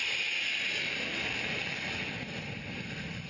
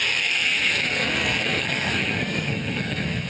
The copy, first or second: second